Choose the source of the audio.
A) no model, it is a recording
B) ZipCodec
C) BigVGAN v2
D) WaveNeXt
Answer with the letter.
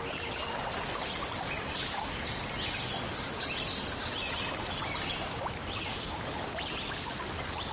A